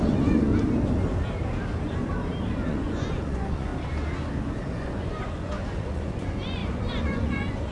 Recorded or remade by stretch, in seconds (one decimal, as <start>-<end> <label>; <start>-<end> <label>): 0.0-0.5 remade; 0.5-2.7 recorded; 2.7-3.7 remade; 3.7-4.7 recorded; 4.7-7.7 remade